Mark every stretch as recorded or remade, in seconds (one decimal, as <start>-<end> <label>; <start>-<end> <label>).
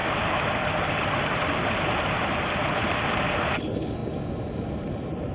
0.0-2.2 recorded; 2.2-4.0 remade; 4.0-4.7 recorded; 4.7-5.3 remade